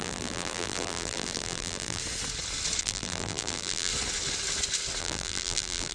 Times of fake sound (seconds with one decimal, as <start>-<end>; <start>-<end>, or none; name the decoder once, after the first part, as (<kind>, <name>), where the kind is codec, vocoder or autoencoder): 0.0-2.0 (vocoder, BigVGAN v2); 2.8-3.9; 5.0-5.9